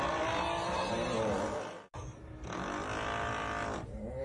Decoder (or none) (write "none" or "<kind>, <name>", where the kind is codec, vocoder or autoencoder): none